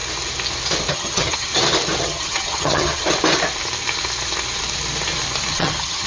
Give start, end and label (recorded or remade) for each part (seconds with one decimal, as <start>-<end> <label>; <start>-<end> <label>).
0.0-0.9 recorded; 0.9-1.5 remade; 1.5-2.0 recorded; 2.0-3.0 remade; 3.0-5.5 recorded; 5.5-6.1 remade

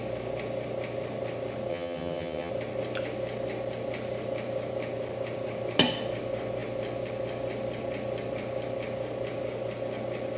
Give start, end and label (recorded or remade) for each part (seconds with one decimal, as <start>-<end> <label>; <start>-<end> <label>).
0.0-1.7 recorded; 1.7-2.5 remade; 2.5-10.4 recorded